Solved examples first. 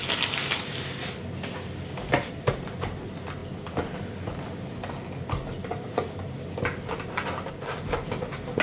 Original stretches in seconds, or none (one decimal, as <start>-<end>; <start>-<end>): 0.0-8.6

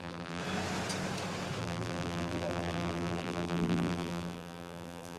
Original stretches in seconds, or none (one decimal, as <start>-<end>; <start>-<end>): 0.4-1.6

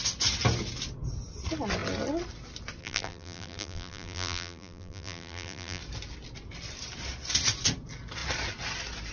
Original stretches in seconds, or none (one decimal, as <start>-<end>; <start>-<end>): 0.0-2.8; 5.8-9.1

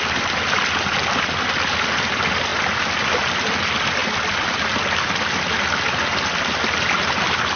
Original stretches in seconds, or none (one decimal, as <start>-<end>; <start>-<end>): 0.0-7.6

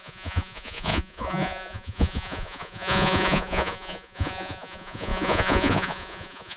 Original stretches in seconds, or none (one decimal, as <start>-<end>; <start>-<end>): none

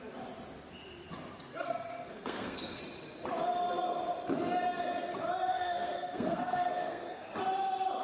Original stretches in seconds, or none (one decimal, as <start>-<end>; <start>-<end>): 0.0-1.5; 2.8-5.5; 7.3-8.0

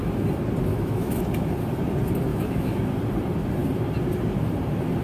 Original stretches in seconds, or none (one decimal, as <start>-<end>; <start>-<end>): 0.0-0.7; 1.2-2.3; 2.8-5.0

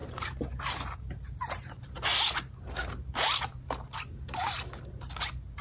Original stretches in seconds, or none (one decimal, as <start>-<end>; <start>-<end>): 1.9-5.6